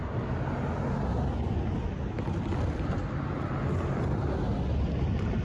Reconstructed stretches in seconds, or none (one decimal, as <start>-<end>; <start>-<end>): none